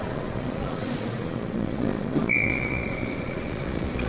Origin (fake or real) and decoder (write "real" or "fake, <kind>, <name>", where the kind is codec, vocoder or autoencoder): fake, vocoder, Vocos